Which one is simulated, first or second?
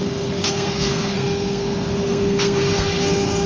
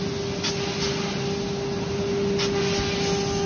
first